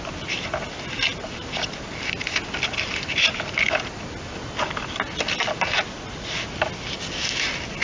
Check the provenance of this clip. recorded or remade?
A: recorded